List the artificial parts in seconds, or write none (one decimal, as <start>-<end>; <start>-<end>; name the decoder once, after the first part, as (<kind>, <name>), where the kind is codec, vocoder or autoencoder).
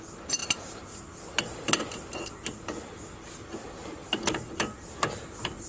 0.4-1.9 (vocoder, BigVGAN v2); 4.0-4.5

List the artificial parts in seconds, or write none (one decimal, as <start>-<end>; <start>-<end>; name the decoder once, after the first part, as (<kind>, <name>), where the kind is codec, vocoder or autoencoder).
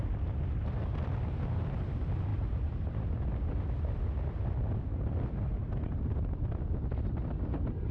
2.3-3.8 (vocoder, BigVGAN v2)